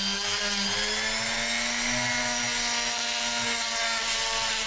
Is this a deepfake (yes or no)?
no